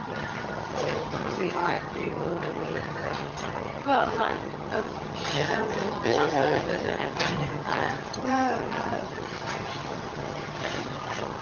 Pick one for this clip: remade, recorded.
remade